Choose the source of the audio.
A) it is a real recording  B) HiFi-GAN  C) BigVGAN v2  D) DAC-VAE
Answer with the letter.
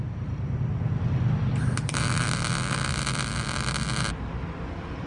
A